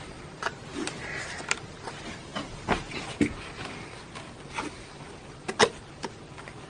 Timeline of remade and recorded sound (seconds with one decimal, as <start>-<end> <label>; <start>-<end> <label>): 0.0-6.7 recorded

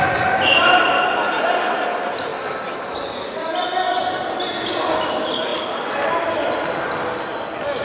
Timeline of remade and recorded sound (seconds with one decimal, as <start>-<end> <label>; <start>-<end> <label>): 0.0-7.8 recorded

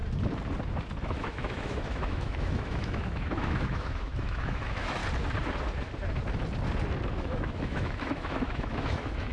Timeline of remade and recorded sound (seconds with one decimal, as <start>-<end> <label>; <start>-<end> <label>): 0.0-1.0 recorded; 1.0-5.0 remade; 5.0-7.1 recorded; 7.1-9.3 remade

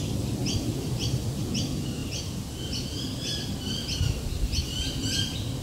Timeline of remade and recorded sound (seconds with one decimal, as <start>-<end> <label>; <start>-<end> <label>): 0.0-5.6 recorded

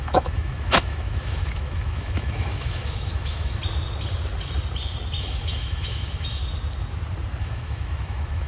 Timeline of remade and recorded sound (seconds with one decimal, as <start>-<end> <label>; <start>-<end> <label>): 0.0-3.6 remade; 3.6-5.2 recorded; 5.2-6.4 remade; 6.4-7.4 recorded; 7.4-8.5 remade

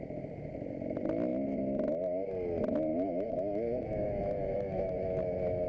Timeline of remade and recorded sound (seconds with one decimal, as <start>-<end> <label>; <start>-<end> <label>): 0.0-2.9 recorded; 2.9-5.7 remade